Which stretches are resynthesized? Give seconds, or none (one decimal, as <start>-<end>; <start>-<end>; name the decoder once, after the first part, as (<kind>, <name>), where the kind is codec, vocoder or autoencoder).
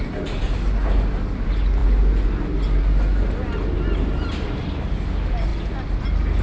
none